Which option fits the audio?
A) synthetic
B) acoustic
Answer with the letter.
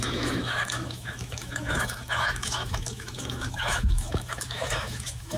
A